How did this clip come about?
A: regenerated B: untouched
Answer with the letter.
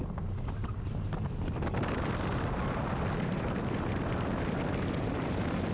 B